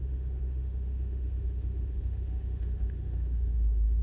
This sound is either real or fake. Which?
fake